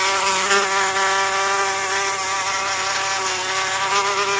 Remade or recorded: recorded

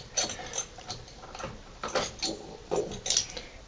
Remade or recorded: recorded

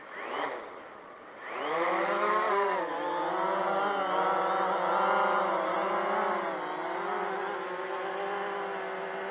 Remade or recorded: recorded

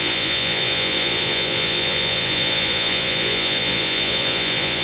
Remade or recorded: remade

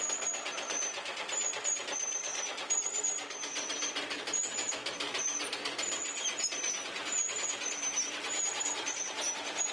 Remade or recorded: remade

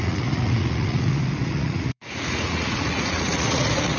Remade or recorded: remade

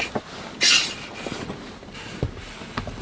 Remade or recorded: recorded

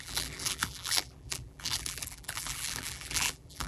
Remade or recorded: remade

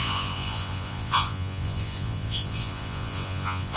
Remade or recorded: remade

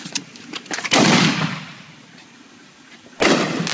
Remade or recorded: recorded